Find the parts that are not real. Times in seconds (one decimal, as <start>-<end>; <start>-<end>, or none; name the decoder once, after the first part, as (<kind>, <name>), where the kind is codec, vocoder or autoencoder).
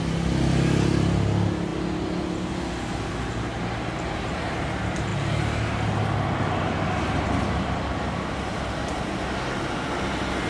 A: none